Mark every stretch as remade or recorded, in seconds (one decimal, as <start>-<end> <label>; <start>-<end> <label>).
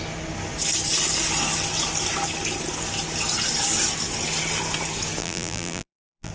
0.0-5.2 recorded; 5.2-6.3 remade